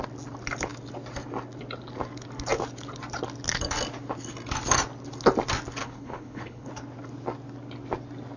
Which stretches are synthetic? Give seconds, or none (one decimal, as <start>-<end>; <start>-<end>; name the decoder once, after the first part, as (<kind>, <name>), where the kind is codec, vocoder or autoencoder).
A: 5.8-6.7 (codec, HILCodec)